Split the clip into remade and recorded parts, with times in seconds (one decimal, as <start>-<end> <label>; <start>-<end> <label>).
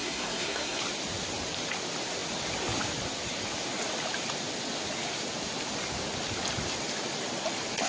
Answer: 0.0-0.8 remade; 0.8-7.9 recorded